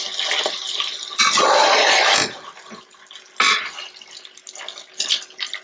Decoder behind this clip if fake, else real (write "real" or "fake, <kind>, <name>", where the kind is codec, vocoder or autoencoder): real